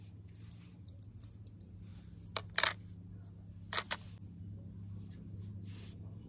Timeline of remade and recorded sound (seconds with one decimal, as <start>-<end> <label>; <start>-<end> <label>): 0.0-6.3 recorded